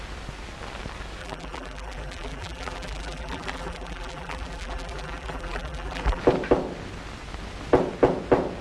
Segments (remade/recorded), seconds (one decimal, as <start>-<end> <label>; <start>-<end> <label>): 0.0-1.2 recorded; 1.2-6.2 remade; 6.2-8.6 recorded